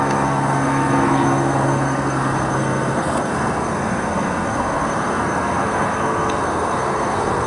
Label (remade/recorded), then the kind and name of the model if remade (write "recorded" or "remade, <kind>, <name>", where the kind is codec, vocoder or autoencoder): remade, codec, SNAC